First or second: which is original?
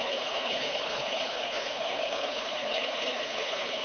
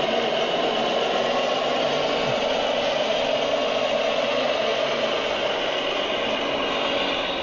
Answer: second